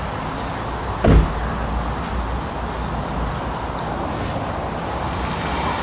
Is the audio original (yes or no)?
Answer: yes